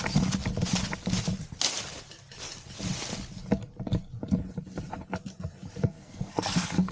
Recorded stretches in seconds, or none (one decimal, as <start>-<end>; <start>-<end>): 0.0-5.8